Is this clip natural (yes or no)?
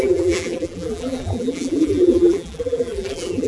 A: no